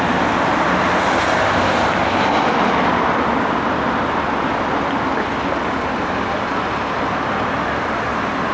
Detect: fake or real real